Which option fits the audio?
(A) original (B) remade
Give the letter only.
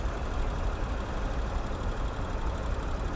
A